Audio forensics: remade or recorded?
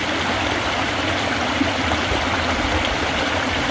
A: recorded